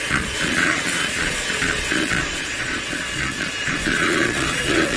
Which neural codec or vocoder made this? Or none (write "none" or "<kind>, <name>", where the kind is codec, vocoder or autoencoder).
vocoder, Vocos